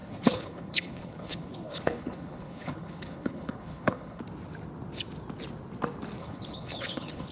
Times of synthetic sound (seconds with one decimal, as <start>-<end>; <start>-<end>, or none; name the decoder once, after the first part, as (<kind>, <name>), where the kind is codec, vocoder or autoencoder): 0.0-4.2 (codec, HILCodec); 6.2-7.3